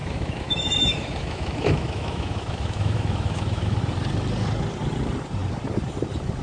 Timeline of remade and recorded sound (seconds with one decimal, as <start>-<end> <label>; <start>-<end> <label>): 0.0-3.8 remade; 3.8-6.4 recorded

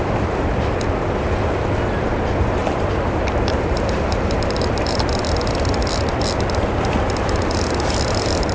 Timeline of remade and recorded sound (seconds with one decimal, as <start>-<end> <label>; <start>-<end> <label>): 0.0-2.6 recorded; 2.6-5.0 remade; 5.0-8.5 recorded

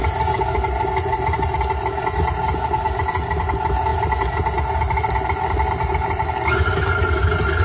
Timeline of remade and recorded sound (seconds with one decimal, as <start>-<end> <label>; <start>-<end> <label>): 0.0-7.6 recorded

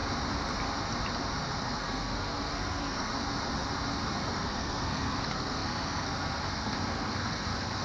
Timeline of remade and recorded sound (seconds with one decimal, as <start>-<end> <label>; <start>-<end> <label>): 0.0-1.6 recorded; 1.6-3.1 remade; 3.1-4.2 recorded; 4.2-7.8 remade

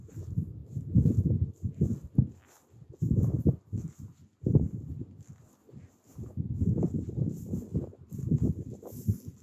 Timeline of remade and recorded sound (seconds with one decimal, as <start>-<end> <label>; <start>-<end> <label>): 0.0-9.4 recorded

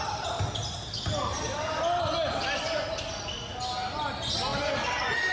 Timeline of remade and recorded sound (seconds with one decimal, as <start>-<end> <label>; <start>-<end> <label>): 0.0-5.3 recorded

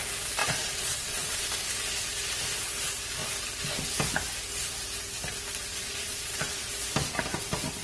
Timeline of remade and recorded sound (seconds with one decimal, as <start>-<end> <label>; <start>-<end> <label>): 0.0-0.4 recorded; 0.4-1.4 remade; 1.4-5.7 recorded; 5.7-6.6 remade; 6.6-7.8 recorded